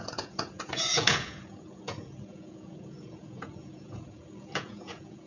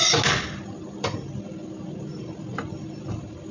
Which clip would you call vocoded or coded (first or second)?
first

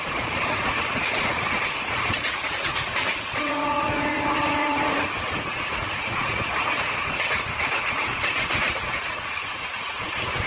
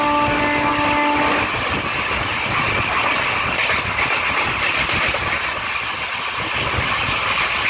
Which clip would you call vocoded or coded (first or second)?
first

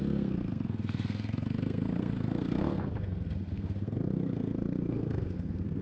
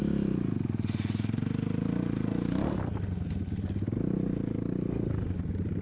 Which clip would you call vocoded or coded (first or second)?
first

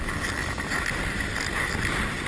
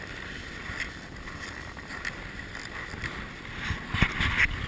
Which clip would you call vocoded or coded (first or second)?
second